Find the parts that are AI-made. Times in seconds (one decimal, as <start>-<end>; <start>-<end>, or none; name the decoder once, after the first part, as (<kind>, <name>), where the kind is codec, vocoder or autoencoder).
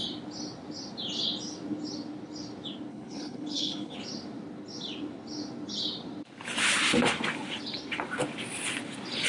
2.9-4.0 (codec, HILCodec)